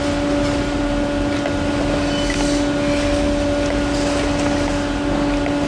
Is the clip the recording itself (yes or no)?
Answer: yes